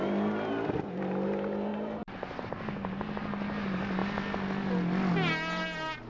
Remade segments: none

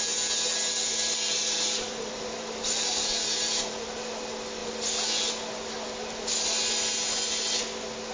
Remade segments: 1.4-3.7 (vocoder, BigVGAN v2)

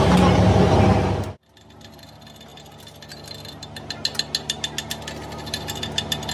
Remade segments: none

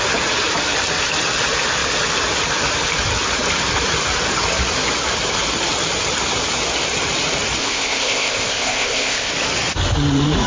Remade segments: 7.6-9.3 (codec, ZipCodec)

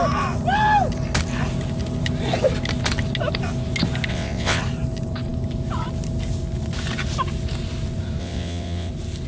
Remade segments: 4.1-4.6 (vocoder, WaveNeXt); 8.2-8.9

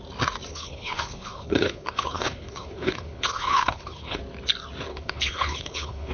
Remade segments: 0.5-4.2 (codec, HILCodec); 4.9-6.1